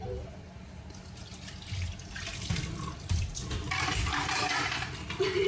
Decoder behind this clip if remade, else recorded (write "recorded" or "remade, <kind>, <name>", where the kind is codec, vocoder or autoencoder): recorded